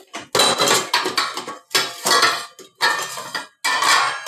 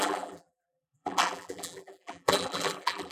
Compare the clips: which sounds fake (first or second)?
second